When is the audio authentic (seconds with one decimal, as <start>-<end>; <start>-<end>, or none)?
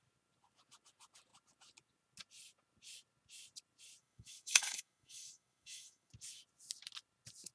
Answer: 0.0-4.0; 6.1-7.5